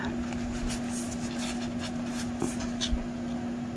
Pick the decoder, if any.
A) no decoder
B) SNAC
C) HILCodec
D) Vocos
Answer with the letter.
A